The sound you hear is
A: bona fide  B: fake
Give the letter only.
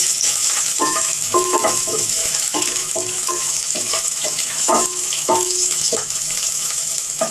B